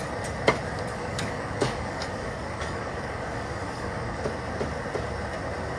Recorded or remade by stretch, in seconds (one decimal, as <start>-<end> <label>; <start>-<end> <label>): 0.0-0.9 recorded; 0.9-4.3 remade; 4.3-5.8 recorded